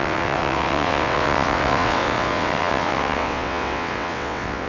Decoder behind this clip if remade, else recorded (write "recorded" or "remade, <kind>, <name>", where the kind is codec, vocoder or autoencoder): remade, vocoder, WaveNeXt